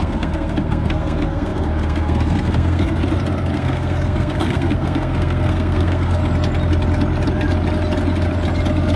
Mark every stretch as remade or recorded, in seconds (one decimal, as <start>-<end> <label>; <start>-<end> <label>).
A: 0.0-3.0 remade; 3.0-3.5 recorded; 3.5-6.2 remade; 6.2-9.0 recorded